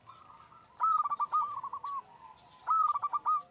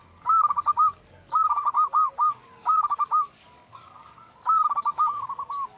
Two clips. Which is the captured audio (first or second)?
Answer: first